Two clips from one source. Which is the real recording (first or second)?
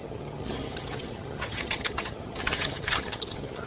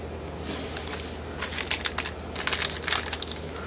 second